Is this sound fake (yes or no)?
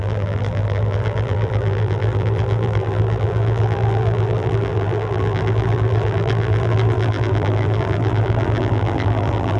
yes